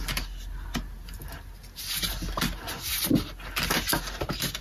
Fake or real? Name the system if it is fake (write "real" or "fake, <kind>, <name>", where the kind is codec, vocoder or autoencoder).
real